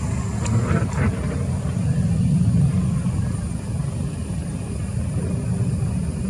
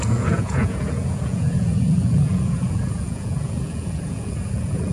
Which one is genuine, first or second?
first